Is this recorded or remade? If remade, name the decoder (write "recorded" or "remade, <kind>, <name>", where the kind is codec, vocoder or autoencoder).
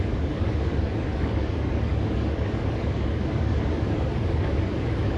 remade, codec, DAC